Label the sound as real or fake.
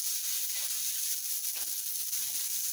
real